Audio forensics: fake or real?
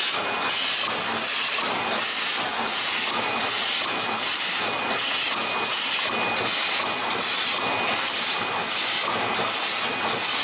real